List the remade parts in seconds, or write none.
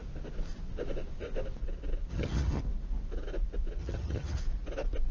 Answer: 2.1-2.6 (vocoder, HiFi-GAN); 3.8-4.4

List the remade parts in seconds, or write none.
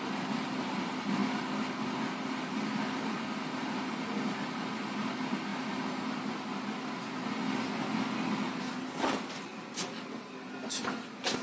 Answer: none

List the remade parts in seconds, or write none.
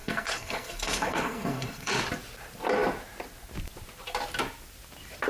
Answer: 0.0-2.0 (codec, SNAC)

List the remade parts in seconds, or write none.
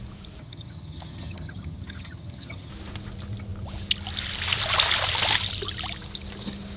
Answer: 0.4-2.7 (vocoder, HiFi-GAN)